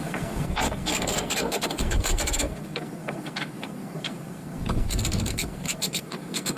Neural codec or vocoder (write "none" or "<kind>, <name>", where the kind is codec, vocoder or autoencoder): codec, SNAC